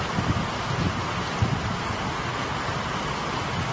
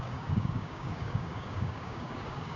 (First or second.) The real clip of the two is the first